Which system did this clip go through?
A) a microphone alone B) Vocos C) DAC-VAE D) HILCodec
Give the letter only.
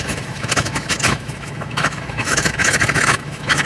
C